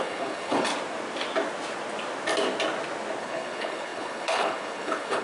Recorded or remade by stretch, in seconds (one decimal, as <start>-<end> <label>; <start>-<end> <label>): 0.0-0.7 remade; 0.7-3.2 recorded; 3.2-5.2 remade